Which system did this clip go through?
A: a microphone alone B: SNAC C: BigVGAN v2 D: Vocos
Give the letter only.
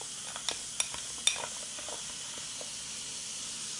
A